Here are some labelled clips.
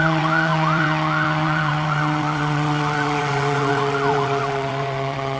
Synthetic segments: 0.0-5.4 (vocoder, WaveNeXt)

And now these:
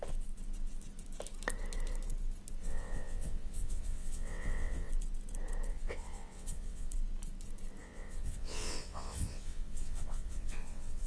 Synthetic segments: 2.6-4.9 (vocoder, WaveNeXt); 5.7-6.9; 7.8-11.1

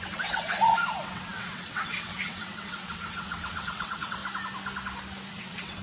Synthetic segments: 0.0-4.2 (vocoder, WaveNeXt); 5.3-5.8

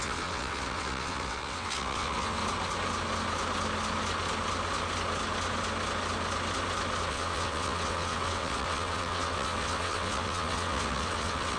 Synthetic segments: 0.0-2.4 (vocoder, WaveNeXt); 7.1-11.6

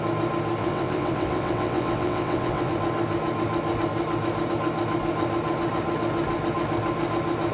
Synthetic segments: 0.6-2.7 (vocoder, WaveNeXt)

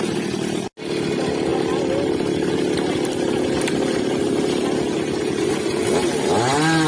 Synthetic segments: none

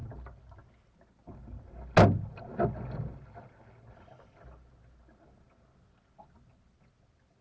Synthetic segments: none

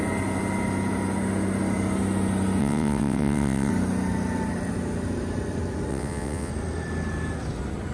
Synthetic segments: 2.6-3.7 (vocoder, WaveNeXt); 5.9-6.5